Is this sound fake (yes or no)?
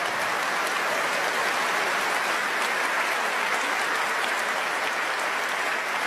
no